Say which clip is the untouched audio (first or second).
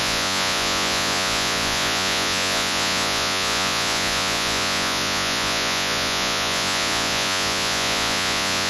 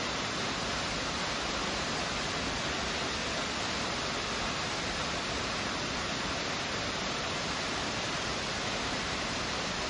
second